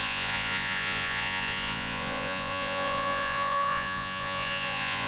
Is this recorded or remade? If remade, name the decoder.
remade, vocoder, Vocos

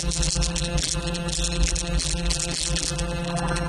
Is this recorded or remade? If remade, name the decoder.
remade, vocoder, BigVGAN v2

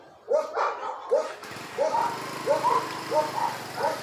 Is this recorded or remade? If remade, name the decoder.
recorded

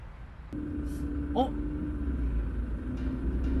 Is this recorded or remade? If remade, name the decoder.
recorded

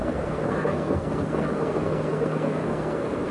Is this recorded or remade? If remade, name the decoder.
remade, codec, SNAC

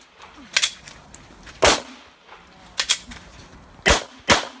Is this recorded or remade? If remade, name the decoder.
recorded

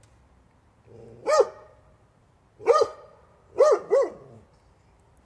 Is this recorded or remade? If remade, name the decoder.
recorded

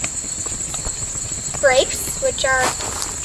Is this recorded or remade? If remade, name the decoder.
recorded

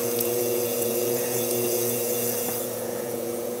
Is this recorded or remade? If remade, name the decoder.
remade, vocoder, Vocos